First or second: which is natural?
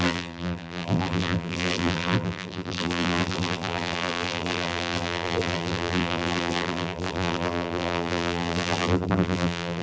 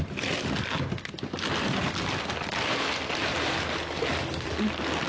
second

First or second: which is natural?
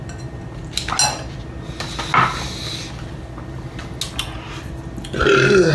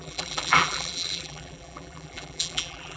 first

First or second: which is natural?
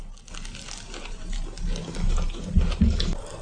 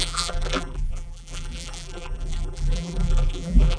first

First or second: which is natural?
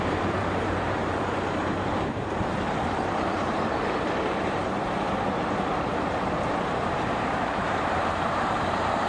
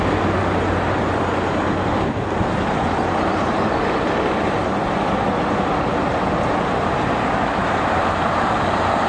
second